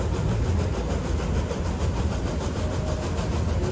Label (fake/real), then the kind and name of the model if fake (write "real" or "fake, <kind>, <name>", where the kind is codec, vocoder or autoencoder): real